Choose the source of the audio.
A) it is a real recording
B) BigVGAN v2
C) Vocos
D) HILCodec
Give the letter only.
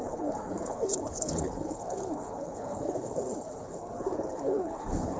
D